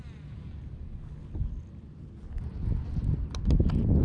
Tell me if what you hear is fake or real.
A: real